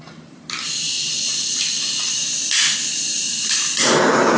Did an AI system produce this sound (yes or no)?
no